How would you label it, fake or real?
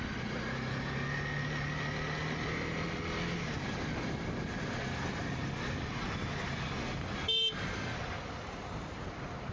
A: real